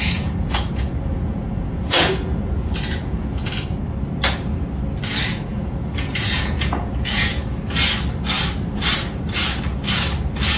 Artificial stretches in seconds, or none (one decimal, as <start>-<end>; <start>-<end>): 0.0-3.5; 5.5-7.6